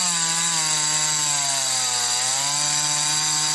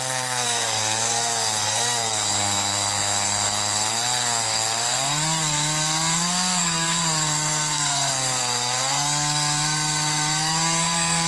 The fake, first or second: second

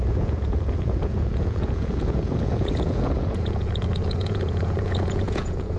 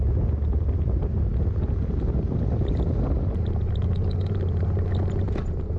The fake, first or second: first